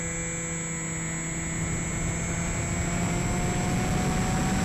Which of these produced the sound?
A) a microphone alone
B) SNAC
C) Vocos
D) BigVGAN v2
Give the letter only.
A